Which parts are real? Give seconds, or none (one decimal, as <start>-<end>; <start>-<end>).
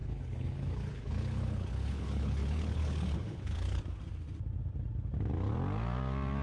3.8-6.4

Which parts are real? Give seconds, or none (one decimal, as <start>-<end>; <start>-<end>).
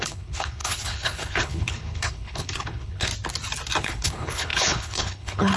3.1-3.8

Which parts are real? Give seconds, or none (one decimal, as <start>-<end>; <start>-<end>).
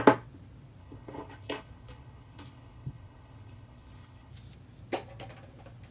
0.0-0.8; 4.3-5.9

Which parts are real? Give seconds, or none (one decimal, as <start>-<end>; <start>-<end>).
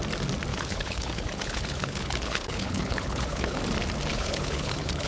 0.0-0.5; 3.6-4.1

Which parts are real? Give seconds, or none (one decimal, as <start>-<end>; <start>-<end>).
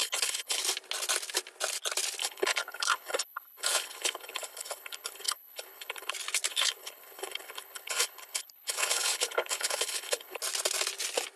0.6-2.2; 6.1-6.5; 10.4-11.4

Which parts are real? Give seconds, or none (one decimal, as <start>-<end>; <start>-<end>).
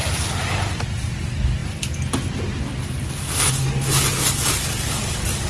0.0-5.5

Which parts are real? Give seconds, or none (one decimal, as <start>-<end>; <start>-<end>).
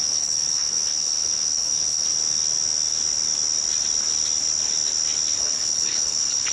2.1-5.4